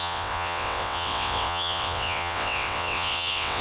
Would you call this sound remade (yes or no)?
yes